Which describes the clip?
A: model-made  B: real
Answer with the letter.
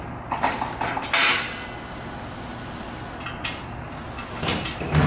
B